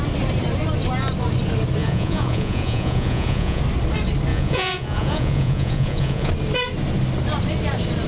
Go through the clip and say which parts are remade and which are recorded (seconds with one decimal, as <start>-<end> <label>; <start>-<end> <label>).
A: 0.0-1.8 recorded; 1.8-3.6 remade; 3.6-4.3 recorded; 4.3-6.3 remade; 6.3-8.1 recorded